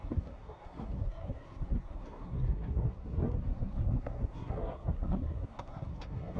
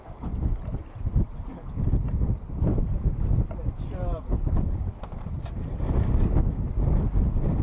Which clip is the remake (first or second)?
first